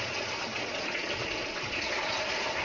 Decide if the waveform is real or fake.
fake